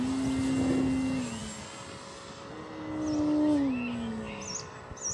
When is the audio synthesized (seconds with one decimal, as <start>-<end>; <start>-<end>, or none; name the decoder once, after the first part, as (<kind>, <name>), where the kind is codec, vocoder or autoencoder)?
none